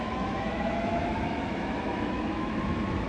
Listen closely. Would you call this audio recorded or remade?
remade